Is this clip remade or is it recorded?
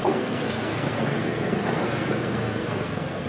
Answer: remade